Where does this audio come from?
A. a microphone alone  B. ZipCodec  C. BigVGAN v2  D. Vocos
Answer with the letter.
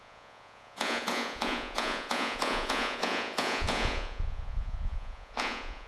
D